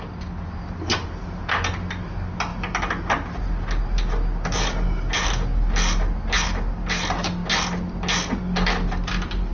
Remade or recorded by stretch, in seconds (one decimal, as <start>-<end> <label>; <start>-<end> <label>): 0.0-9.5 recorded